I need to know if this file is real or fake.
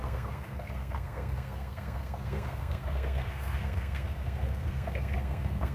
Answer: fake